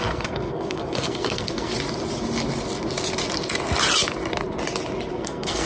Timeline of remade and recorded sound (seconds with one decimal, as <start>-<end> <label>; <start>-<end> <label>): 0.0-1.7 remade; 1.7-5.1 recorded; 5.1-5.7 remade

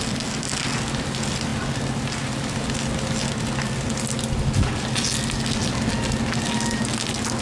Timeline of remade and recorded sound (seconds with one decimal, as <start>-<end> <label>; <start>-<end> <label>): 0.0-7.4 recorded

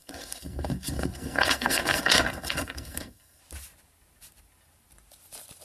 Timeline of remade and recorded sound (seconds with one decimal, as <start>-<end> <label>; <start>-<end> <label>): 0.0-3.4 remade; 3.4-5.6 recorded

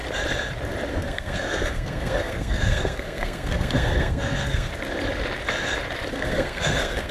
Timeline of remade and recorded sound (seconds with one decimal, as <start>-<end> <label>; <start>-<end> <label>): 0.0-0.9 recorded; 0.9-4.7 remade; 4.7-6.1 recorded; 6.1-7.1 remade

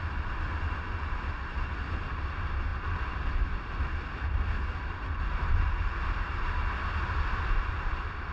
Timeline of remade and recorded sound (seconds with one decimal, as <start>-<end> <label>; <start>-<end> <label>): 0.0-8.3 recorded